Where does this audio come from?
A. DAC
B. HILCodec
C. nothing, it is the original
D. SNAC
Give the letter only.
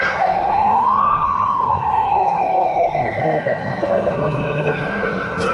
D